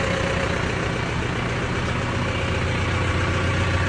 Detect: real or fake real